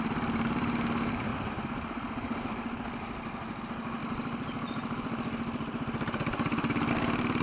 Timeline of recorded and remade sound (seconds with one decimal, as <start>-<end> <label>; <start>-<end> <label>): 0.0-1.3 recorded; 1.3-3.6 remade; 3.6-4.0 recorded; 4.0-6.9 remade; 6.9-7.4 recorded

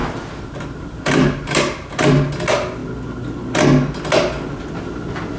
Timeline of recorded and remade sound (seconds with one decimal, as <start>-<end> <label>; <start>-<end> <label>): 0.0-5.4 recorded

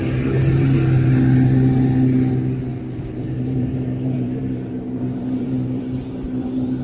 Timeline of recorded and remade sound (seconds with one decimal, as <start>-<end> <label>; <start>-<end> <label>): 0.0-2.7 recorded; 2.7-6.8 remade

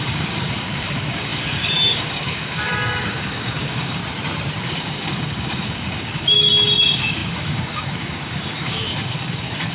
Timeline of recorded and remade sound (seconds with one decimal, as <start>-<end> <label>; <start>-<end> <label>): 0.0-4.0 remade; 4.0-4.6 recorded; 4.6-9.7 remade

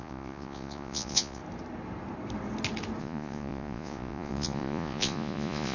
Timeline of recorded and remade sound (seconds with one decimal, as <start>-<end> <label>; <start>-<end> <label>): 0.0-1.4 remade; 1.4-3.0 recorded; 3.0-5.7 remade